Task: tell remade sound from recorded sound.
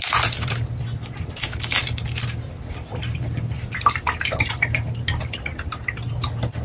recorded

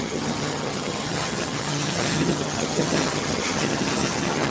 remade